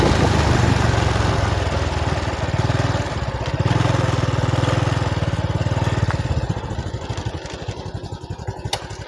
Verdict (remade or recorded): recorded